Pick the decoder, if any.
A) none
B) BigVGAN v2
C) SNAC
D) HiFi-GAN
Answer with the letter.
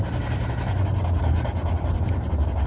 A